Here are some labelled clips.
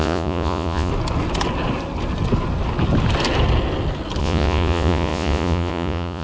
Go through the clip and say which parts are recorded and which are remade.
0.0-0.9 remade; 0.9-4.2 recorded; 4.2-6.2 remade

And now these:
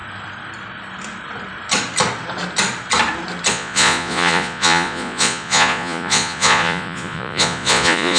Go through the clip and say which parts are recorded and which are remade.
0.0-3.5 recorded; 3.5-8.2 remade

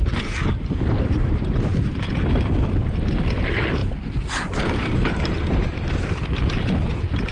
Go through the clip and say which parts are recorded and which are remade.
0.0-3.8 recorded; 3.8-5.3 remade; 5.3-7.3 recorded